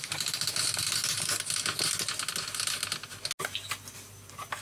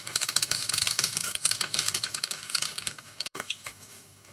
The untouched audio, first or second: first